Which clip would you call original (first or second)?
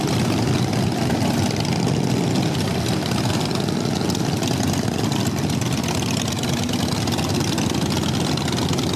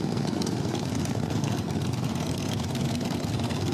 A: first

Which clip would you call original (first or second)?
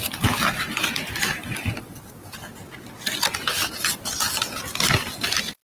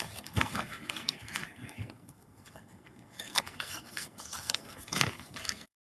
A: first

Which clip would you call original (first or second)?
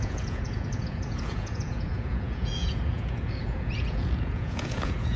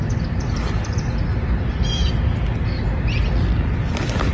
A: second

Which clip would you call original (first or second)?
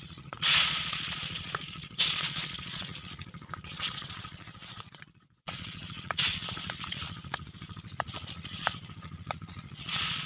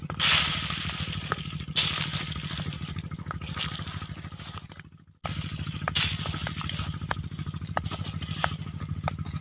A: second